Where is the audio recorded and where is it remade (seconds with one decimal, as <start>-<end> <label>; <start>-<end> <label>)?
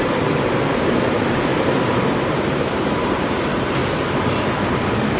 0.0-3.8 remade; 3.8-5.2 recorded